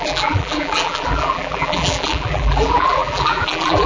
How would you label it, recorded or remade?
remade